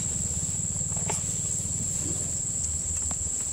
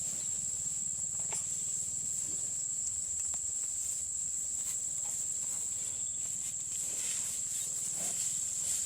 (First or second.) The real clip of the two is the first